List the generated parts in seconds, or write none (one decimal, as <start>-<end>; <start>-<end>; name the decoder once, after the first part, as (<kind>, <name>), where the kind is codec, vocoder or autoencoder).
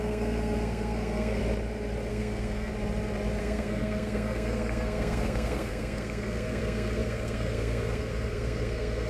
0.0-1.4 (codec, SNAC); 2.1-2.7; 3.4-9.1